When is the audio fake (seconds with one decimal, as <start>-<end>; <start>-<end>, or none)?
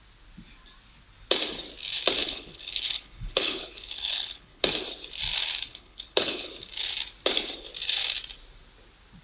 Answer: 2.2-4.6; 5.7-6.5